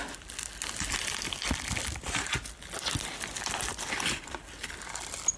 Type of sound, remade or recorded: recorded